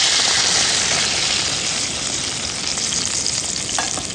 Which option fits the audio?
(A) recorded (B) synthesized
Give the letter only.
A